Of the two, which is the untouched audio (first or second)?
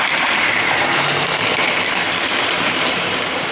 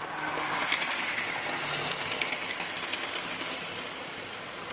second